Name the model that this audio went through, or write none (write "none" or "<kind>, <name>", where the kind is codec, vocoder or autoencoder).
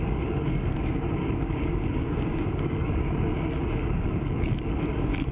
codec, DAC